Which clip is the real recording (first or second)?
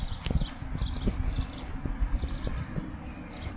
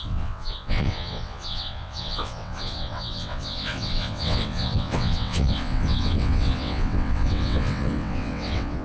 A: first